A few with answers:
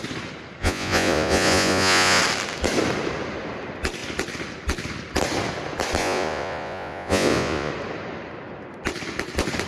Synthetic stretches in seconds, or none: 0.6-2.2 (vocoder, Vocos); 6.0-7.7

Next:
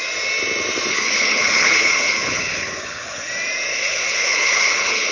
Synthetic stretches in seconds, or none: 0.9-3.3 (codec, HILCodec); 3.7-5.1

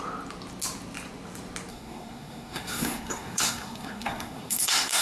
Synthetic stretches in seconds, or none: 1.7-5.0 (codec, SNAC)